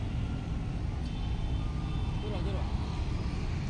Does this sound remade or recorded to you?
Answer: recorded